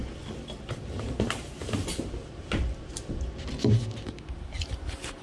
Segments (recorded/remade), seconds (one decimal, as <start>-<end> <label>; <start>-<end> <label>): 0.0-5.2 recorded

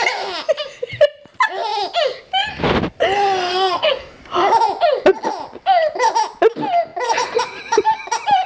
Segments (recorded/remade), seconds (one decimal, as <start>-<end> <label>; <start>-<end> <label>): 0.0-3.5 recorded; 3.5-4.2 remade; 4.2-8.5 recorded

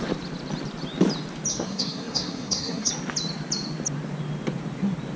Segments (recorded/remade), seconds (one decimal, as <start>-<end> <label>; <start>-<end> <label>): 0.0-1.5 recorded; 1.5-2.9 remade; 2.9-5.2 recorded

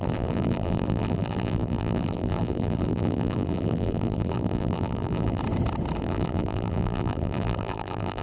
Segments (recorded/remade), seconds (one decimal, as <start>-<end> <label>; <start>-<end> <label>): 0.0-5.4 remade; 5.4-6.0 recorded; 6.0-8.2 remade